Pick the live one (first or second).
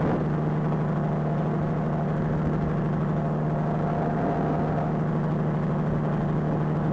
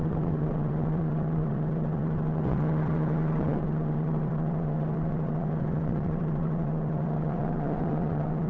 first